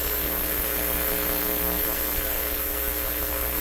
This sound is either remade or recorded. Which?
remade